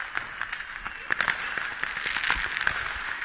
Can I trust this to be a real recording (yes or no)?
yes